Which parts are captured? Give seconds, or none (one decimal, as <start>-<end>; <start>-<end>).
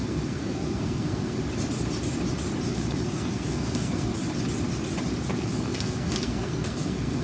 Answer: 1.4-2.7; 4.1-5.3